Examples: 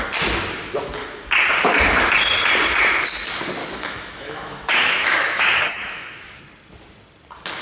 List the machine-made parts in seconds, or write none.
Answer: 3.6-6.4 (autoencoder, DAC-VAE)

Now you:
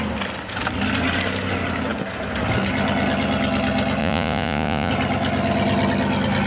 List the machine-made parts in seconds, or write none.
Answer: 4.0-4.9 (vocoder, Vocos)

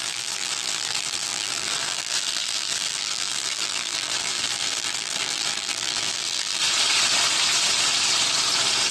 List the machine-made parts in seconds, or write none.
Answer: 0.0-6.6 (vocoder, BigVGAN v2)

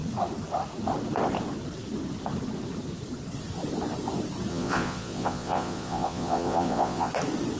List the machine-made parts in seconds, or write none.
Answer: 4.5-7.1 (vocoder, Vocos)